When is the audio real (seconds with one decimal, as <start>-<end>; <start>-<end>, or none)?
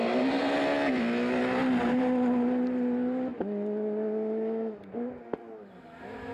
0.0-6.3